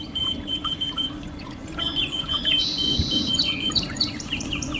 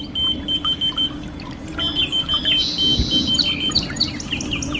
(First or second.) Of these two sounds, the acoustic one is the second